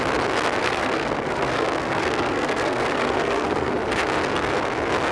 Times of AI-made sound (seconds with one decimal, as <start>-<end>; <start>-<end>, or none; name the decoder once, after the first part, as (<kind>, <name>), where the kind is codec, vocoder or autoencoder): 0.6-3.7 (codec, SNAC)